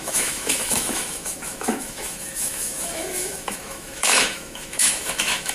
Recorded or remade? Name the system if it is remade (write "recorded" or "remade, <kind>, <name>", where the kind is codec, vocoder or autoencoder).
remade, autoencoder, DAC-VAE